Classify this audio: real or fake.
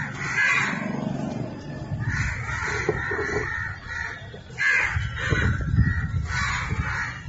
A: real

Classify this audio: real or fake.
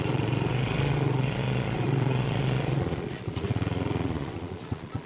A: fake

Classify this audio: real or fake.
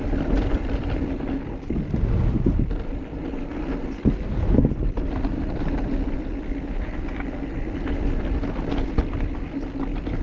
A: real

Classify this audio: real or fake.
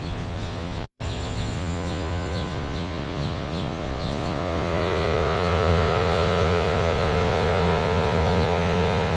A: fake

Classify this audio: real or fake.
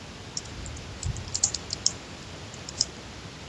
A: real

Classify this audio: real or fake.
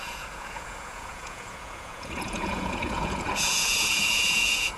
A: fake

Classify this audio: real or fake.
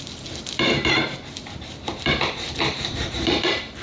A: fake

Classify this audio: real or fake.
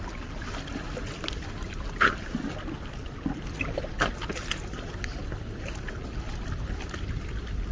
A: real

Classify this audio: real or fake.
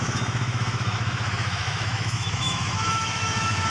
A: fake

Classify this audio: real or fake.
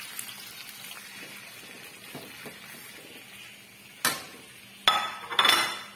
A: real